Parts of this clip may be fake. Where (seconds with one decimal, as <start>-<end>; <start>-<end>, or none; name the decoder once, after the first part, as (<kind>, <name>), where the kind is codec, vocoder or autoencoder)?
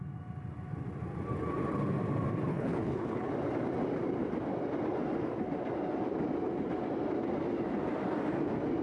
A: 2.5-3.3 (codec, HILCodec)